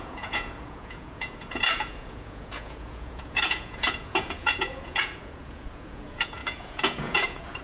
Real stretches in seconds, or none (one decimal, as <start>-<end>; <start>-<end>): none